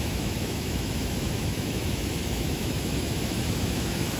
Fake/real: fake